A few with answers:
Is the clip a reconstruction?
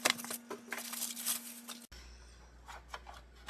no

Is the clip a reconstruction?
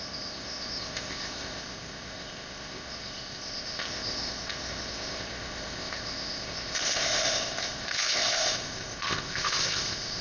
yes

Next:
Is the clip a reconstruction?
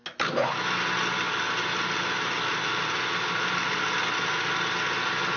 no